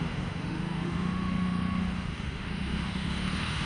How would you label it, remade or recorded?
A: remade